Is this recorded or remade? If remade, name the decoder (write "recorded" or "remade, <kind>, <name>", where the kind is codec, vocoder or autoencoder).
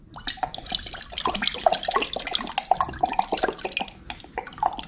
recorded